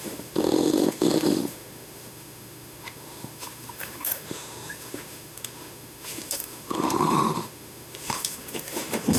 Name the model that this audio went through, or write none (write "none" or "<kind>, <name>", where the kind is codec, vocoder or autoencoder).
autoencoder, DAC-VAE